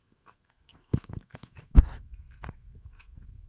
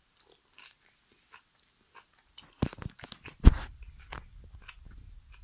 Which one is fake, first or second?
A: first